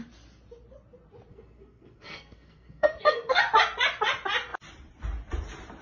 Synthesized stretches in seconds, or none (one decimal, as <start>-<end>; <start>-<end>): 1.3-3.4